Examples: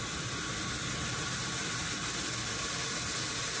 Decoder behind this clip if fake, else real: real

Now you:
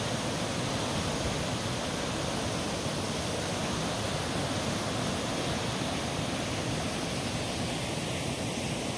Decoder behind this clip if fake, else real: real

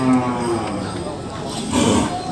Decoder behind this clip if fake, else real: real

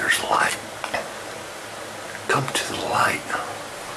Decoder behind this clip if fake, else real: real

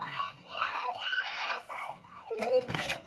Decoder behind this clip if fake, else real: fake, codec, SNAC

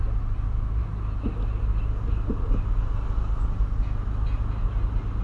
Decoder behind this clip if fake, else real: real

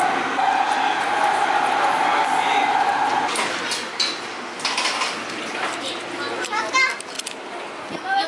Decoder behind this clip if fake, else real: real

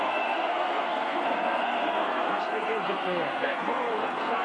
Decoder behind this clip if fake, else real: fake, codec, SNAC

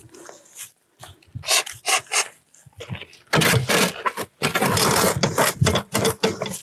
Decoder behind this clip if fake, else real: real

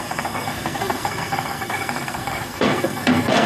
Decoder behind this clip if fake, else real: fake, codec, SNAC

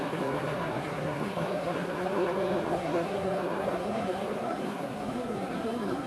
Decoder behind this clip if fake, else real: fake, codec, SNAC